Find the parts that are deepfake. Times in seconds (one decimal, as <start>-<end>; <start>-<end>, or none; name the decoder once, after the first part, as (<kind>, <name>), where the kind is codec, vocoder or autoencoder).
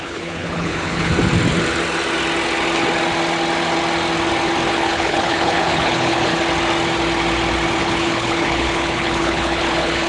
0.0-1.1 (codec, HILCodec); 4.7-6.3; 7.8-10.1